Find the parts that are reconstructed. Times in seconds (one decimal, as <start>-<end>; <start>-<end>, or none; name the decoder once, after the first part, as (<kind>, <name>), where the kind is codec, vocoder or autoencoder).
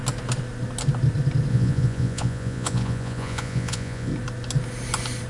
1.5-4.1 (vocoder, Vocos)